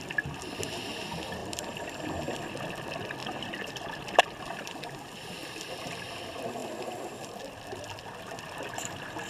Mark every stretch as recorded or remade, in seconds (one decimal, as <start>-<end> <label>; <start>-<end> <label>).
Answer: 0.0-1.4 recorded; 1.4-1.9 remade; 1.9-3.2 recorded; 3.2-4.2 remade; 4.2-9.3 recorded